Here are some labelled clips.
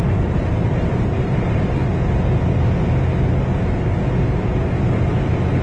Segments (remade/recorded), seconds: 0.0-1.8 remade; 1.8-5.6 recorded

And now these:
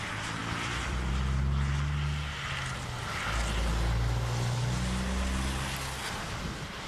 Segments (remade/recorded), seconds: 0.0-0.4 recorded; 0.4-1.1 remade; 1.1-6.9 recorded

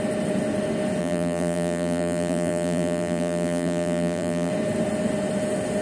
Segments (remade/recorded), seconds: 0.0-1.0 recorded; 1.0-4.5 remade; 4.5-5.8 recorded

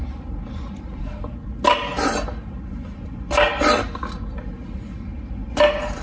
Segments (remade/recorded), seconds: 0.0-1.0 remade; 1.0-6.0 recorded

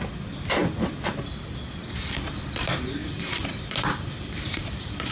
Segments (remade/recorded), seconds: 0.0-3.0 recorded; 3.0-5.1 remade

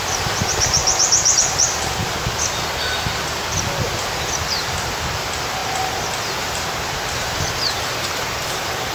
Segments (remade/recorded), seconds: 0.0-0.8 remade; 0.8-1.4 recorded; 1.4-2.0 remade; 2.0-3.8 recorded; 3.8-8.9 remade

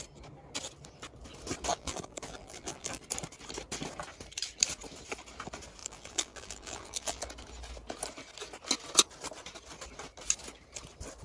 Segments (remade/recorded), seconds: 0.0-1.7 recorded; 1.7-3.0 remade; 3.0-5.8 recorded; 5.8-7.3 remade; 7.3-11.2 recorded